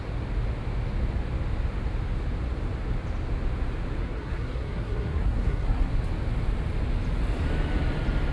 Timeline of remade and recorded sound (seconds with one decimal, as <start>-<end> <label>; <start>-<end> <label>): 0.0-4.0 recorded; 4.0-5.9 remade; 5.9-8.3 recorded